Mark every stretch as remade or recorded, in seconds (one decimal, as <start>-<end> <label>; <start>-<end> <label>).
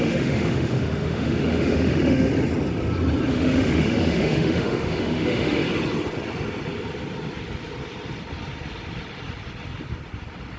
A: 0.0-2.3 remade; 2.3-3.3 recorded; 3.3-5.6 remade; 5.6-10.6 recorded